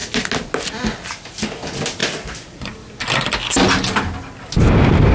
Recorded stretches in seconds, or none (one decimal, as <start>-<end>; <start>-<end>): 0.0-5.1